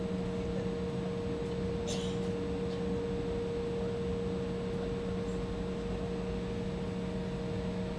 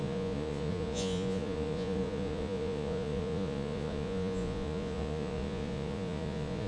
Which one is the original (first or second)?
first